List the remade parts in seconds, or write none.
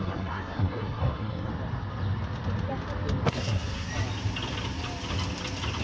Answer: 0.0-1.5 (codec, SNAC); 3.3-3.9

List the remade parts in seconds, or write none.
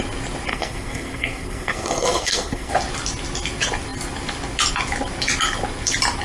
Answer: 0.5-2.7 (codec, SNAC)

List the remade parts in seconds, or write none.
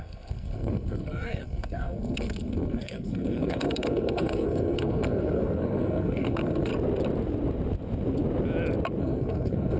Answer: 0.0-6.7 (codec, SNAC); 9.0-9.8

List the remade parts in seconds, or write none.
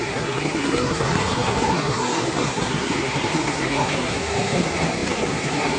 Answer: 0.0-5.8 (codec, SNAC)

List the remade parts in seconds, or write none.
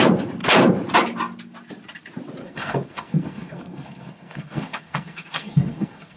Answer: 2.4-6.2 (codec, SNAC)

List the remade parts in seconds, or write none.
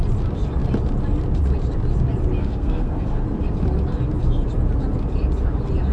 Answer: 2.4-3.2 (codec, SNAC)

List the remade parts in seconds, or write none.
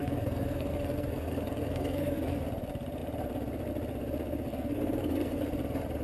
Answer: 0.0-2.4 (codec, SNAC); 4.5-5.4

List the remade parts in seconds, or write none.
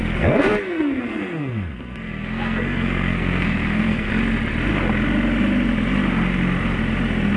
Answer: 0.0-4.1 (codec, SNAC)